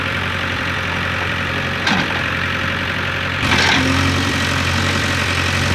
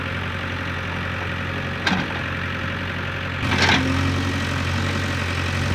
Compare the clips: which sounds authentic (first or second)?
second